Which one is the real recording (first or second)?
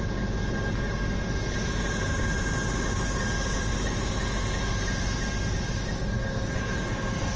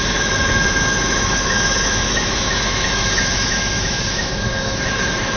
first